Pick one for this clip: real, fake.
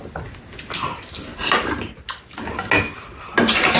real